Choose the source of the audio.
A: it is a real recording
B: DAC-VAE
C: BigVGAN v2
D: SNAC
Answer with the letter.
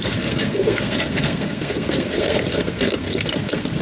D